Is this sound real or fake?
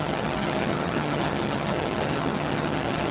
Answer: fake